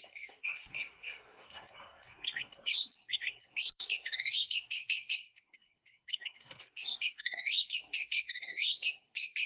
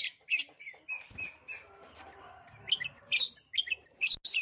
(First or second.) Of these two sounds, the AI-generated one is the first